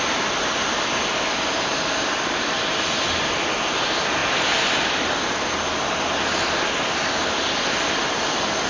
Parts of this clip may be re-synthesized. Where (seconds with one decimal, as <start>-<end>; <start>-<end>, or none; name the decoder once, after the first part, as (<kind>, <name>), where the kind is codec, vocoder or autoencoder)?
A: none

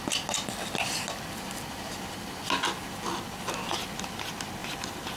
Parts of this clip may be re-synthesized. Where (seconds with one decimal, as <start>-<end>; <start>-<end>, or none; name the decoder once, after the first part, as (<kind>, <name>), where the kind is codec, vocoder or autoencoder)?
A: 4.6-5.2 (vocoder, BigVGAN v2)

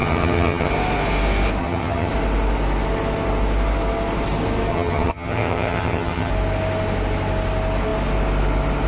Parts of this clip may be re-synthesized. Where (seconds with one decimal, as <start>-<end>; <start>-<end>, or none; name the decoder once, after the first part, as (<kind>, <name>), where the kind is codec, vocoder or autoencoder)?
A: 0.0-0.7 (vocoder, HiFi-GAN); 1.6-2.1; 4.7-6.3

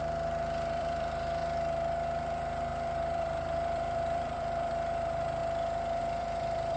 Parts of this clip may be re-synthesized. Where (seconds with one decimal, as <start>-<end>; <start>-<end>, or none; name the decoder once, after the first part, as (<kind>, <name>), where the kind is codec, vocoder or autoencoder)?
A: 0.0-1.4 (vocoder, BigVGAN v2); 2.2-5.4; 6.0-6.8

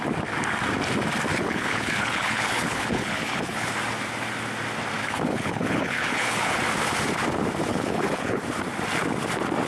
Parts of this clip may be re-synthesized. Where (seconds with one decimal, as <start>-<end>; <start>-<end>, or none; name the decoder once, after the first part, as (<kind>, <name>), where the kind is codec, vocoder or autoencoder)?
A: 1.3-3.7 (codec, HILCodec); 5.0-6.6; 7.7-8.4

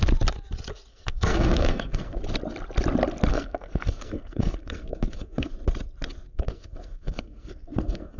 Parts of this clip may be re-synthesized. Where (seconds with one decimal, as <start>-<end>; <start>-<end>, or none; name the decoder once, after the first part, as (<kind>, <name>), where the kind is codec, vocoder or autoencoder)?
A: 0.9-2.2 (codec, SNAC); 3.3-5.5; 6.3-8.2

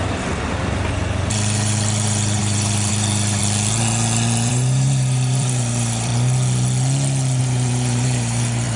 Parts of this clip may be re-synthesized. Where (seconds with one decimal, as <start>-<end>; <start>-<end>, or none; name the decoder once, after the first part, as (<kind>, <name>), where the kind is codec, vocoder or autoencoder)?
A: 0.0-3.4 (vocoder, BigVGAN v2); 4.5-6.1; 7.4-8.8